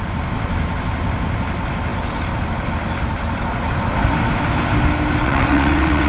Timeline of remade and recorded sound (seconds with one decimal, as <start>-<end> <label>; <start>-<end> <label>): 0.0-5.2 recorded; 5.2-6.1 remade